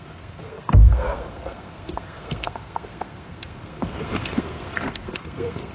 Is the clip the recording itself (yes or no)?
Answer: no